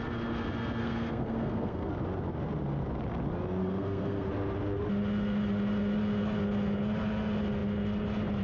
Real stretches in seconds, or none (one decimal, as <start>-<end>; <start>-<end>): 0.0-0.8; 1.9-3.6; 4.3-8.4